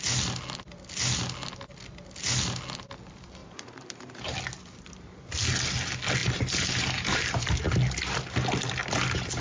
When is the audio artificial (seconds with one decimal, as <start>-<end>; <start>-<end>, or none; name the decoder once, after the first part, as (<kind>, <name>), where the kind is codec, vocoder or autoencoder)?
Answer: 3.4-4.4 (vocoder, BigVGAN v2); 6.2-7.4